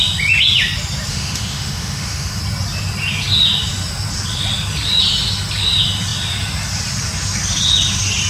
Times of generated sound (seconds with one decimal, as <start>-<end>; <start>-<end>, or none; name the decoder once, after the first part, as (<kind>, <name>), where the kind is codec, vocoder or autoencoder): 1.1-2.4 (autoencoder, DAC-VAE)